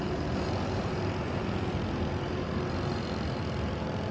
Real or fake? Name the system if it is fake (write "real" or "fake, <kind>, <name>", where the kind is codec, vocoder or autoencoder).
real